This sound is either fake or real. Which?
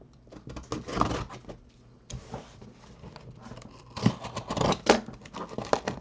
real